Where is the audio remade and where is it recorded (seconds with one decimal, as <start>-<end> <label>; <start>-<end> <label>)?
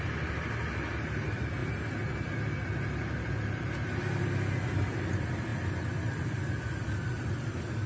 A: 0.0-1.6 remade; 1.6-5.0 recorded; 5.0-7.9 remade